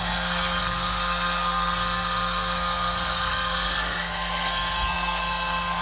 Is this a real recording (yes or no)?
no